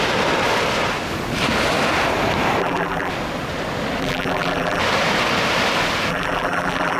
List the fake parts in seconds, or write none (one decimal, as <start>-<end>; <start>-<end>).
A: 2.6-3.1; 4.0-4.8; 6.1-7.0